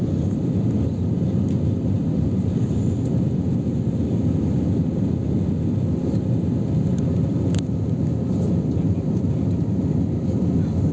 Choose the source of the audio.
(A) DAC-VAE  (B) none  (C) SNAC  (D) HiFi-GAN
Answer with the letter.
B